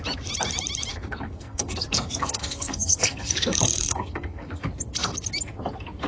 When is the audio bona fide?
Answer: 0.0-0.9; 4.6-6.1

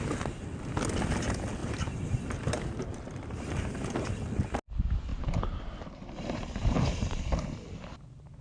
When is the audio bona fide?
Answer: 0.0-1.6; 3.7-5.1; 7.3-8.4

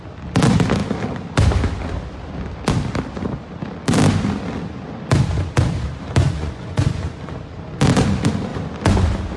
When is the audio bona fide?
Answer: 0.0-6.2; 7.3-9.4

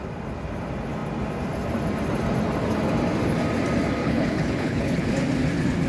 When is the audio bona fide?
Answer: 0.0-4.0; 5.1-5.9

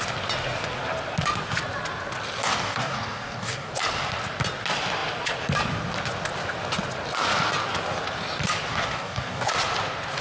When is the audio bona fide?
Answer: 0.0-2.4; 3.7-8.7; 9.5-10.2

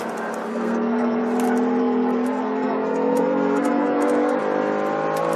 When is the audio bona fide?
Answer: 0.0-0.5; 1.2-1.8; 4.4-5.4

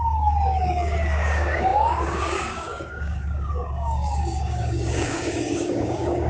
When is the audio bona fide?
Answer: none